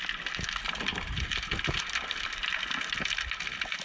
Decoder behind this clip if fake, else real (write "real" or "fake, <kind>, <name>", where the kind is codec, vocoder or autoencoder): real